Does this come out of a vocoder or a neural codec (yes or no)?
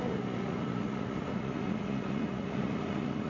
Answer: yes